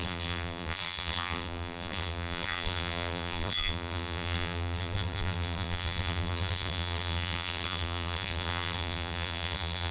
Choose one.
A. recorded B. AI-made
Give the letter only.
B